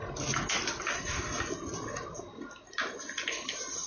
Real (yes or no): yes